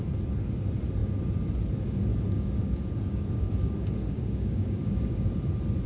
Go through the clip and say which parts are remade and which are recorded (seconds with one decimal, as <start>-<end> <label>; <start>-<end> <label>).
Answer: 0.0-2.1 recorded; 2.1-5.3 remade; 5.3-5.9 recorded